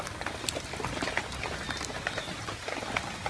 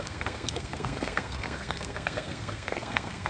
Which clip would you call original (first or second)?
first